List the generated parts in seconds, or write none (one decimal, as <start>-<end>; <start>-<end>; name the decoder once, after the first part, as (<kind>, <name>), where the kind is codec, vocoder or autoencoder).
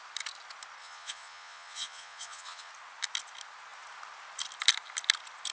0.8-2.7 (vocoder, Vocos)